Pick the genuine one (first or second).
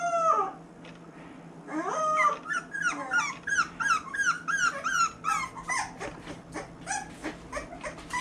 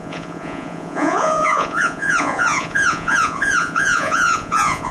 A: first